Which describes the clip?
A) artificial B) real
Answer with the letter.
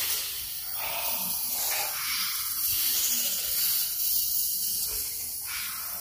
B